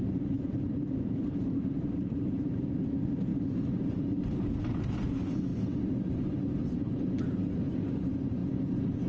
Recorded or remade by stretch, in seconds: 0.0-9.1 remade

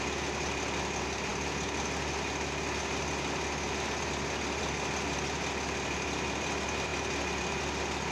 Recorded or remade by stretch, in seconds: 0.0-8.1 recorded

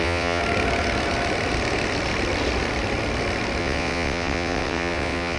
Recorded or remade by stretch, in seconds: 0.0-0.4 remade; 0.4-3.6 recorded; 3.6-5.4 remade

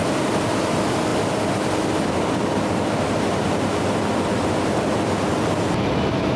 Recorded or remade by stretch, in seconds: 0.0-1.1 recorded; 1.1-4.9 remade; 4.9-6.4 recorded